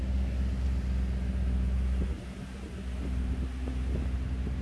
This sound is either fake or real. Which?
real